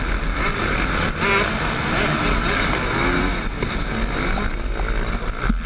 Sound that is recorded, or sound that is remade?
recorded